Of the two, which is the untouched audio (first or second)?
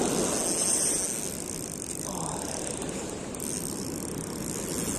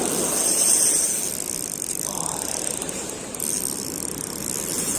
first